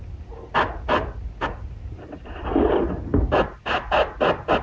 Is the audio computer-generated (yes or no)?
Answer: no